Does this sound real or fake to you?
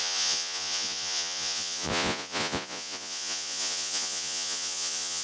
fake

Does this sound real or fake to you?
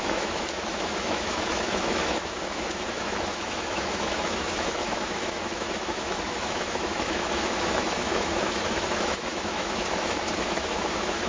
fake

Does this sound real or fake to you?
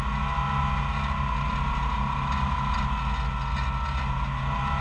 real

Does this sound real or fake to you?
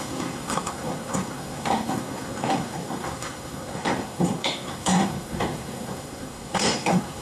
fake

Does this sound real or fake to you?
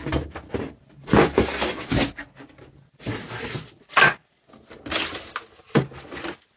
real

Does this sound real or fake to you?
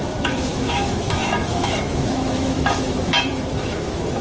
fake